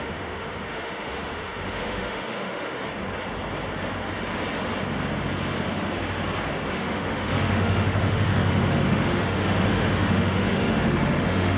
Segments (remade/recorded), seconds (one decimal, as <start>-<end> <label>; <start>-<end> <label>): 0.0-2.9 remade; 2.9-6.7 recorded; 6.7-11.6 remade